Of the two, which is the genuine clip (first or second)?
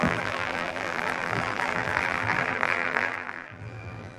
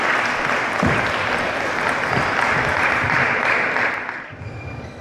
second